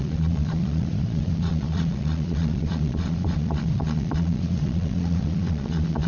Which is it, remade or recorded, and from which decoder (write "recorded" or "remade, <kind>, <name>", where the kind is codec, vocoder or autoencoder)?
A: remade, vocoder, Vocos